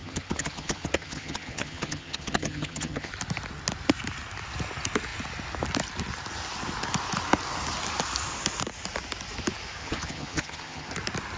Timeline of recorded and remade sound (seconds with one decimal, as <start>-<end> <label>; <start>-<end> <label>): 0.0-3.1 remade; 3.1-9.8 recorded; 9.8-10.9 remade; 10.9-11.4 recorded